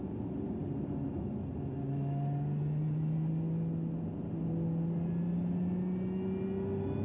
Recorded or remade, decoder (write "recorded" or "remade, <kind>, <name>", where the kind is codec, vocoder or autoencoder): recorded